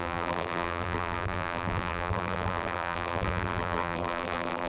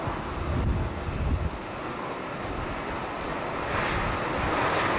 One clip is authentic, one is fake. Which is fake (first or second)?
first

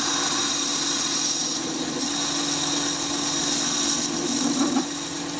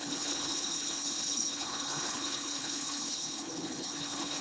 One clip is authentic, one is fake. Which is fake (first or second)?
second